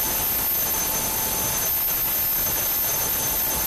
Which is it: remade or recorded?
recorded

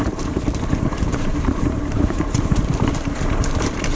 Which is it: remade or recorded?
remade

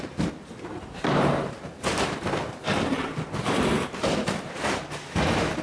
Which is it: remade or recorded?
remade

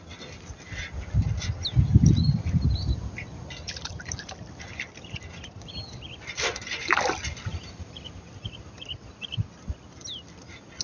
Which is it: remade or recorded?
recorded